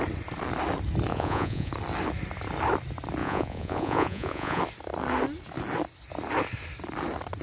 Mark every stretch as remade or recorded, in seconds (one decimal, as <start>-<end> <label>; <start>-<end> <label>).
0.0-1.1 recorded; 1.1-1.7 remade; 1.7-3.2 recorded; 3.2-4.6 remade; 4.6-7.4 recorded